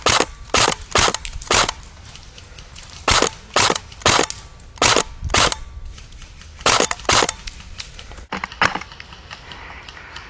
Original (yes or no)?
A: yes